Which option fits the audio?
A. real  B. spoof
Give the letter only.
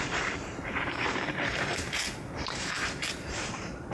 B